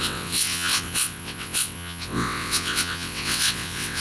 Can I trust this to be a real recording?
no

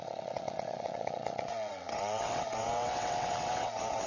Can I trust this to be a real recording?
no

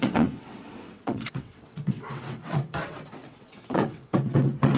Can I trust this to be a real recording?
no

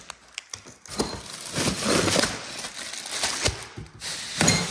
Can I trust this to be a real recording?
yes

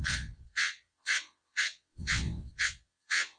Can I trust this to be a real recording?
no